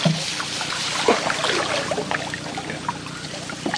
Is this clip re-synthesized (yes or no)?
no